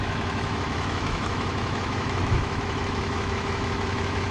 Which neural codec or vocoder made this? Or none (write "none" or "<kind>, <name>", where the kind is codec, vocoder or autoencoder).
autoencoder, DAC-VAE